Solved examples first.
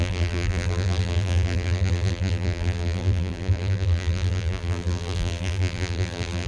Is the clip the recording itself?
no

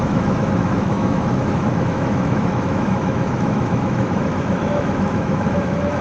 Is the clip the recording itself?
no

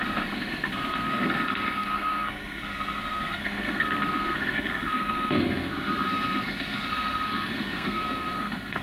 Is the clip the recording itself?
no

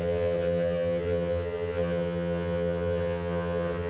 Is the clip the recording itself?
no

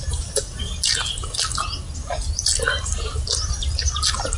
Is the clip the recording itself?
yes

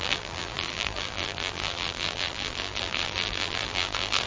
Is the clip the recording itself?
no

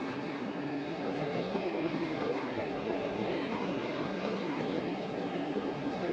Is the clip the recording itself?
no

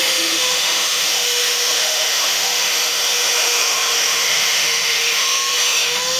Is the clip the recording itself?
no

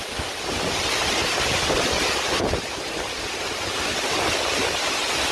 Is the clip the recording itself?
yes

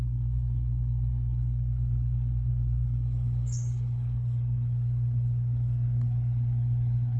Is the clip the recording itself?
no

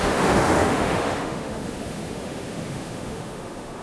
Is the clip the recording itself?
no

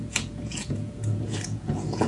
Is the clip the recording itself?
no